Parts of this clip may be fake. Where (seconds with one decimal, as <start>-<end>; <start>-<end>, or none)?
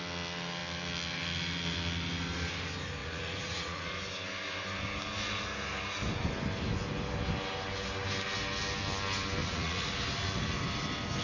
3.0-3.9; 9.4-9.9